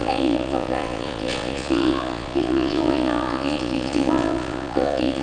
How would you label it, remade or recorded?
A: remade